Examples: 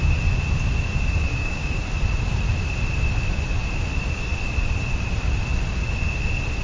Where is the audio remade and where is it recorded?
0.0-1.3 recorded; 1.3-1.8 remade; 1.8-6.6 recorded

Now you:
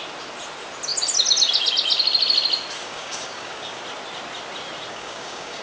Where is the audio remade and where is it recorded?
0.0-2.8 recorded; 2.8-3.8 remade; 3.8-4.9 recorded; 4.9-5.6 remade

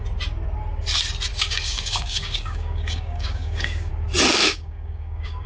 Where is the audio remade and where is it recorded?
0.0-1.3 recorded; 1.3-3.9 remade; 3.9-4.4 recorded; 4.4-5.5 remade